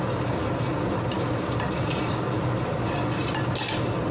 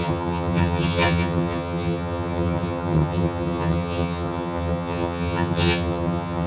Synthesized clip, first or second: second